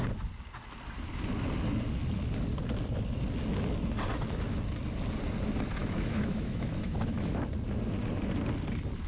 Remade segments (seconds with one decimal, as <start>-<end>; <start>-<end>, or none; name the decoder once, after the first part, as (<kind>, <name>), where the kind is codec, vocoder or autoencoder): 5.8-7.4 (autoencoder, DAC-VAE)